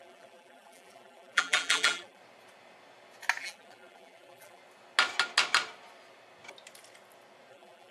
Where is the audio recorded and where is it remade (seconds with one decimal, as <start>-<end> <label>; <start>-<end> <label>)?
0.0-2.2 remade; 2.2-3.4 recorded; 3.4-4.6 remade; 4.6-7.5 recorded; 7.5-7.9 remade